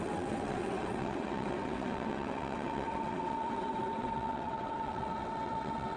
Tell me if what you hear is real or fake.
fake